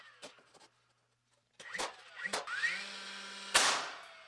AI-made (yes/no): no